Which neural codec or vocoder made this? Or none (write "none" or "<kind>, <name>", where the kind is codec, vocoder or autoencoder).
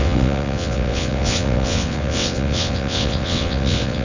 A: vocoder, WaveNeXt